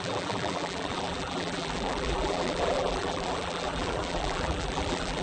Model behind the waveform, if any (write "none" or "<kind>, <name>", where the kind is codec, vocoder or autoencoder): vocoder, BigVGAN v2